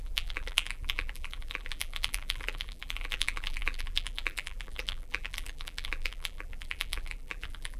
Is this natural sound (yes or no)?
no